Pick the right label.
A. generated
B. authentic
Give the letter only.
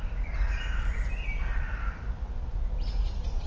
B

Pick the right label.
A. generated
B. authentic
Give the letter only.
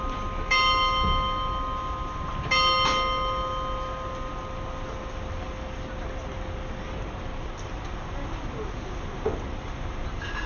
B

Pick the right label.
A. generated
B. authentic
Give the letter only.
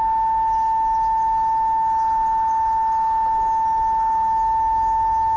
B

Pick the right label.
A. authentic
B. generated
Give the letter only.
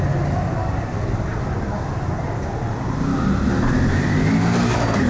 A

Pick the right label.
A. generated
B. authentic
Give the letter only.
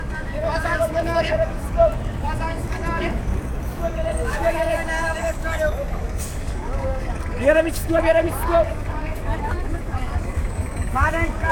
A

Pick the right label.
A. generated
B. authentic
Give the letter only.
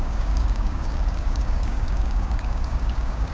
A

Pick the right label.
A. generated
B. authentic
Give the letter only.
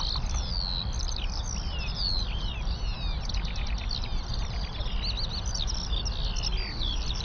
B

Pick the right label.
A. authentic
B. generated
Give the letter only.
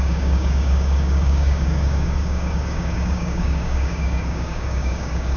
B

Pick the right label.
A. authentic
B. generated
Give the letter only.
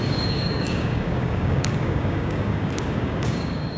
B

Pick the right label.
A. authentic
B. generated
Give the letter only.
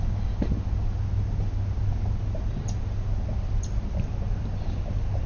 A